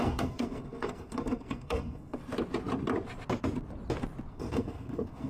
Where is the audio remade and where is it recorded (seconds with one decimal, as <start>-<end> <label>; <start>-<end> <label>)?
0.0-2.2 remade; 2.2-4.3 recorded; 4.3-5.3 remade